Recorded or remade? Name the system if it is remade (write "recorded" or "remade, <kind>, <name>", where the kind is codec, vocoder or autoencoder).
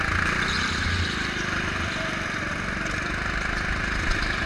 remade, vocoder, BigVGAN v2